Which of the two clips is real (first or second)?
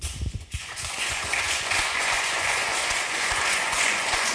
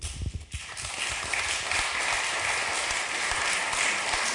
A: second